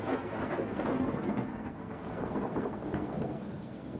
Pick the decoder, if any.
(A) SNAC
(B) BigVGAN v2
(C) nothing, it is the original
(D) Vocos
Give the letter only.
A